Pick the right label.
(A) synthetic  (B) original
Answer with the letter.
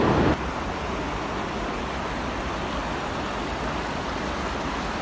B